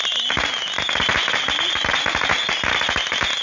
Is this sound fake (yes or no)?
no